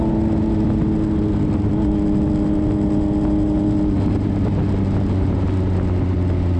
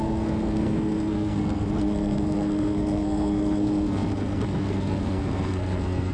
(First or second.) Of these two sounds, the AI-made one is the second